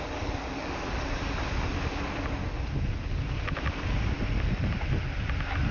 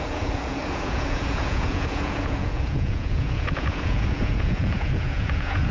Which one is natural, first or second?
first